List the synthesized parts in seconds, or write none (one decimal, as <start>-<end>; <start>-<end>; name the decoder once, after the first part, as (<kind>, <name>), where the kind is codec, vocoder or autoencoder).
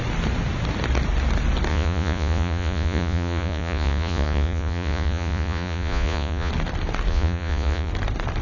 1.7-6.5 (vocoder, Vocos); 7.1-7.9